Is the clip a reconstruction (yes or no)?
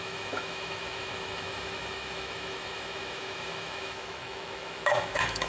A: yes